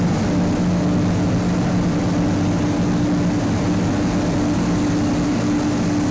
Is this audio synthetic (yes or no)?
no